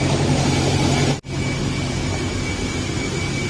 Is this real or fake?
real